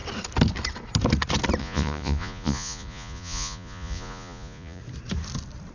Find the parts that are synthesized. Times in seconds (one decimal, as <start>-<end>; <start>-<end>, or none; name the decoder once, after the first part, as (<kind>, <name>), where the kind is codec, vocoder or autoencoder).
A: 1.6-4.8 (vocoder, Vocos)